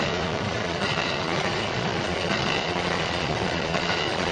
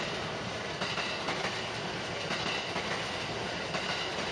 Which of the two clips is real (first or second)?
second